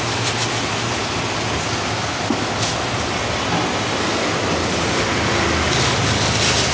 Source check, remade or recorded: recorded